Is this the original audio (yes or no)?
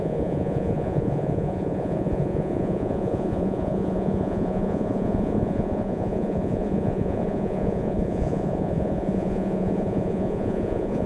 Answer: no